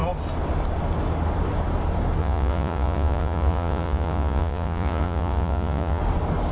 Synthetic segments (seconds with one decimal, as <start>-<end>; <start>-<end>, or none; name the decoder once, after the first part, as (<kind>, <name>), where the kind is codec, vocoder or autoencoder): 2.2-6.0 (vocoder, Vocos)